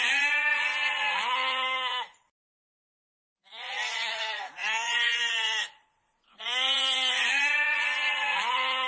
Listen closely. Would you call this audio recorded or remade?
remade